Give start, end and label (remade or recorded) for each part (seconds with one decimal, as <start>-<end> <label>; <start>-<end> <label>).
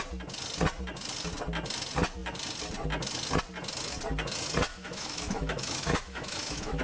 0.0-4.7 recorded; 4.7-6.8 remade